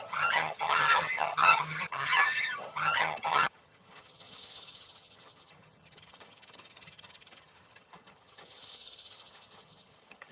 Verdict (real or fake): fake